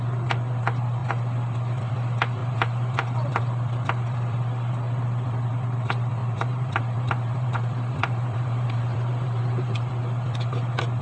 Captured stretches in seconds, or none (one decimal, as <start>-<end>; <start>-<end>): 0.0-2.4; 3.4-6.2; 9.9-11.0

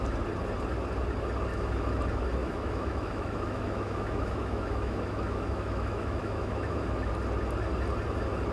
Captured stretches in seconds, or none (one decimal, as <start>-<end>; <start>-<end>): 0.0-1.5; 2.0-2.4; 7.1-8.5

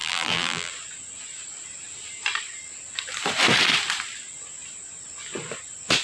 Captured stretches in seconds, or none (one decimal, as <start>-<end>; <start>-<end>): 0.7-6.0

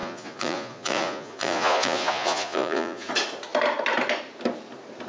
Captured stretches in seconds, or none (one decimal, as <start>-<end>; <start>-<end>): 3.1-5.1

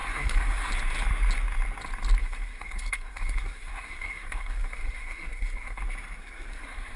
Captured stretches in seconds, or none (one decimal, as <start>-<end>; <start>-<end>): 0.7-2.2; 5.8-6.2

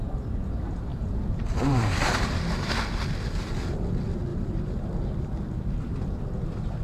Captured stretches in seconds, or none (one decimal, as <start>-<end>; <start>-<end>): 0.0-0.9; 2.4-4.3; 4.9-6.8